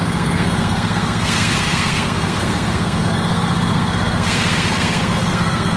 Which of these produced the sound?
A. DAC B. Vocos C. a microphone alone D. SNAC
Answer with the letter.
D